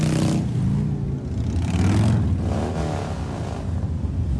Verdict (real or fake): real